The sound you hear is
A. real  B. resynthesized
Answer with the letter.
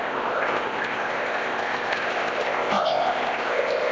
B